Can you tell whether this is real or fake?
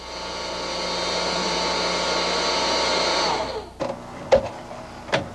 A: real